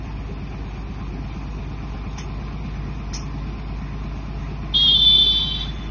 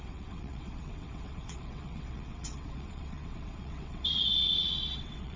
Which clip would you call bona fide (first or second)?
first